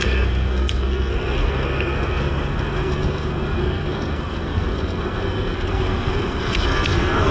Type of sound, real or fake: fake